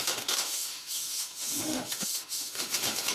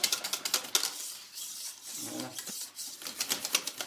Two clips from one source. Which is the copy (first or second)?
first